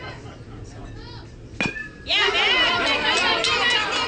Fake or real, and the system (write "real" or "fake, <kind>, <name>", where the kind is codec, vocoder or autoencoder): real